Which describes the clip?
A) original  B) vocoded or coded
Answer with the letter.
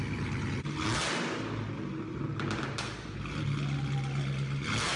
A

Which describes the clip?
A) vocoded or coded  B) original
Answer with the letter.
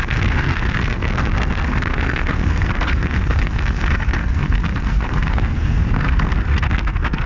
A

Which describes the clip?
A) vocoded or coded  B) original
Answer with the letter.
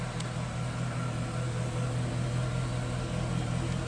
B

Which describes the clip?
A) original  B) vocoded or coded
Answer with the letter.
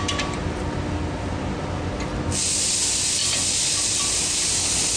A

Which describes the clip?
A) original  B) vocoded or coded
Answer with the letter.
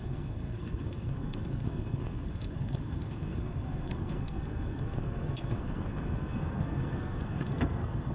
B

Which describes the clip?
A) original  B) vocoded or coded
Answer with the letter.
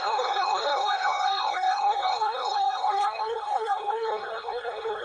B